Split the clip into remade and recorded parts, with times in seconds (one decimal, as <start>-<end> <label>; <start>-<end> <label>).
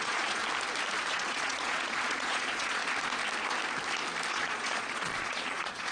0.0-0.4 remade; 0.4-1.1 recorded; 1.1-2.8 remade; 2.8-4.3 recorded; 4.3-5.9 remade